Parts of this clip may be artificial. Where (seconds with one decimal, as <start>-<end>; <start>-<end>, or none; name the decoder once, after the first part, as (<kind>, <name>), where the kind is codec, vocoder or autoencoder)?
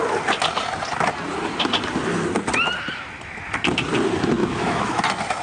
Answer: 4.4-5.0 (autoencoder, DAC-VAE)